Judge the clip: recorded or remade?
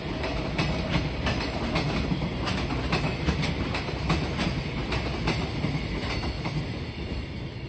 recorded